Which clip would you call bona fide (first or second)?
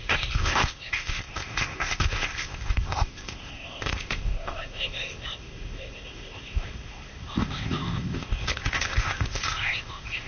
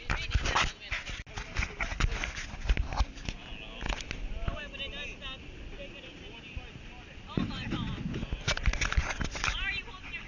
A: second